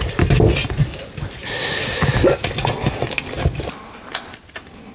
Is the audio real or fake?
real